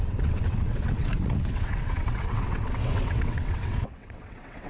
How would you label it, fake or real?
fake